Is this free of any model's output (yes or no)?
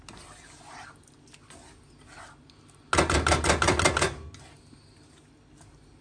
yes